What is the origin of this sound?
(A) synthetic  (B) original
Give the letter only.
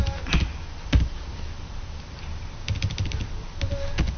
B